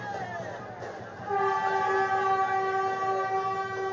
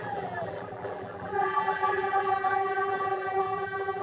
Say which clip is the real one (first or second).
first